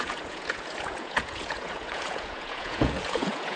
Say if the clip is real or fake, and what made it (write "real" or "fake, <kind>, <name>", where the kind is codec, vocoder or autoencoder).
fake, vocoder, Vocos